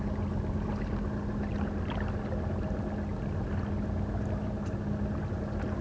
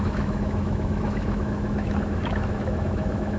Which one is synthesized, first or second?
second